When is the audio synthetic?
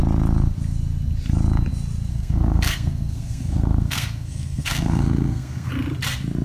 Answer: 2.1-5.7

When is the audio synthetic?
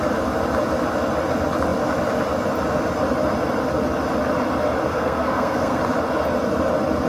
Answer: 4.9-5.8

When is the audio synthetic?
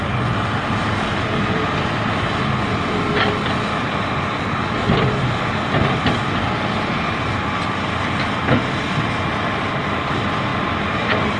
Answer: none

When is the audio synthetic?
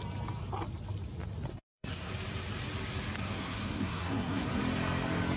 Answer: 1.5-2.1; 3.2-4.6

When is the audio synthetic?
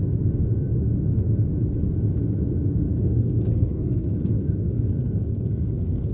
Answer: 2.9-6.1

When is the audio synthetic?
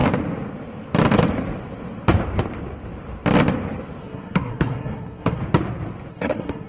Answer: 4.0-5.4; 6.1-6.7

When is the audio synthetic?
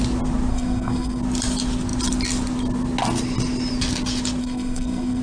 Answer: 0.5-1.2; 4.4-5.2